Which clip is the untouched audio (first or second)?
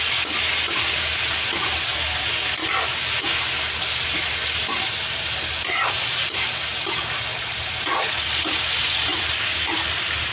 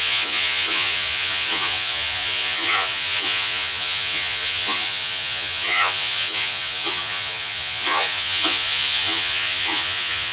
first